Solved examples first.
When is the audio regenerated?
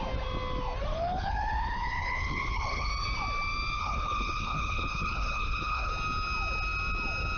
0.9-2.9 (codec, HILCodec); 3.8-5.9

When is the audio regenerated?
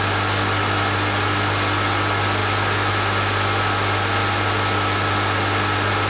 none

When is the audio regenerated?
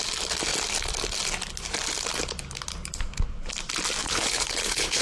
4.0-5.0 (codec, HILCodec)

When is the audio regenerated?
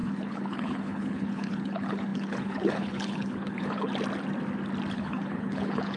0.0-3.9 (codec, HILCodec); 4.9-6.0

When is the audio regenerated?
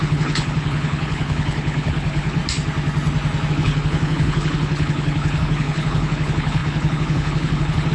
0.0-2.4 (codec, HILCodec); 3.5-7.9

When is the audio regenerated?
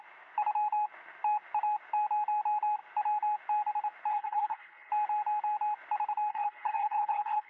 4.1-4.9 (codec, HILCodec); 6.3-7.5